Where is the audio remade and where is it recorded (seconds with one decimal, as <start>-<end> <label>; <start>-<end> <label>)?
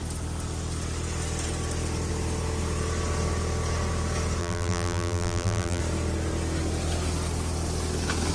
0.0-4.4 recorded; 4.4-5.8 remade; 5.8-8.3 recorded